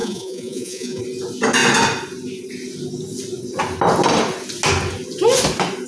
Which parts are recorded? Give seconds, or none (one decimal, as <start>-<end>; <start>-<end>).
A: 1.0-5.9